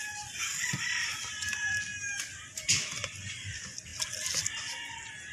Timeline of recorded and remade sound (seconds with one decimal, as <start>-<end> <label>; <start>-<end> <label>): 0.0-1.9 remade; 1.9-3.0 recorded; 3.0-3.9 remade; 3.9-5.3 recorded